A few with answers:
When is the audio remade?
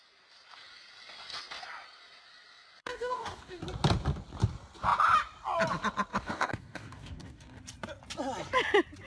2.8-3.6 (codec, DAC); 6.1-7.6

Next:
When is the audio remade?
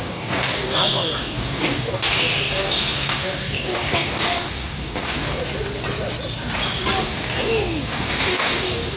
0.0-5.4 (codec, DAC); 7.0-9.0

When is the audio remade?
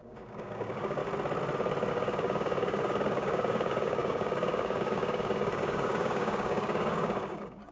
0.0-1.0 (codec, DAC); 1.9-7.7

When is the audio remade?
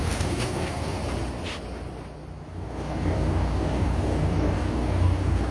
0.0-1.0 (codec, DAC); 2.5-5.5